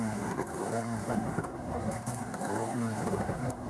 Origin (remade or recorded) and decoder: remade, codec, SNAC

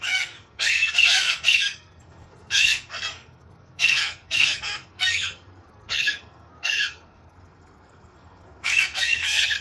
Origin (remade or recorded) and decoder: remade, codec, SNAC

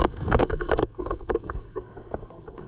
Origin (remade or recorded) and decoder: remade, codec, SNAC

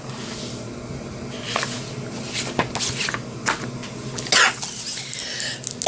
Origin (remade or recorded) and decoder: recorded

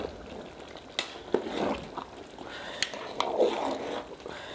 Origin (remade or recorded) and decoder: recorded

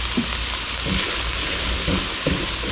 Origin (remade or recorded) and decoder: recorded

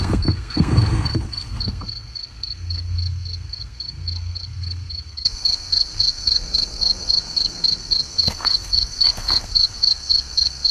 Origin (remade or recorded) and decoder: remade, codec, SNAC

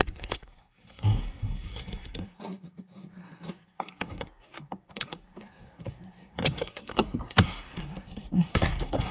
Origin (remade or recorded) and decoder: remade, codec, SNAC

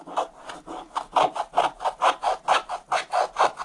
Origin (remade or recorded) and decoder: recorded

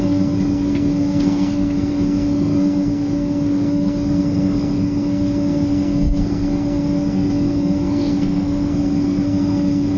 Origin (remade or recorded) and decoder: remade, codec, SNAC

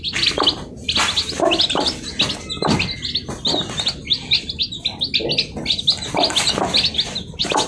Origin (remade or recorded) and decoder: recorded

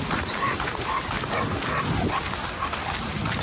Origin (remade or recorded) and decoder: recorded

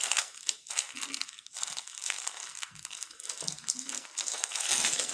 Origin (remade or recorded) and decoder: remade, codec, SNAC